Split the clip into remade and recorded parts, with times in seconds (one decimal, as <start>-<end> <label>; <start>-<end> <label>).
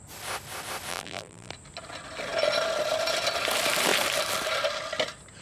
0.0-0.9 recorded; 0.9-1.5 remade; 1.5-5.4 recorded